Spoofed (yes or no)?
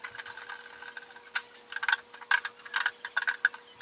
no